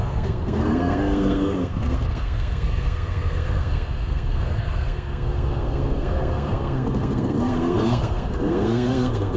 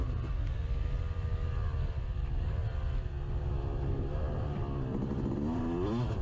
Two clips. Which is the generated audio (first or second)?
first